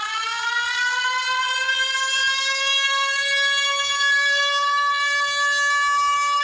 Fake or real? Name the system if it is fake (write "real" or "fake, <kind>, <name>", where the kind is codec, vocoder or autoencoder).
real